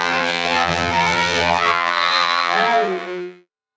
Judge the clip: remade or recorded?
remade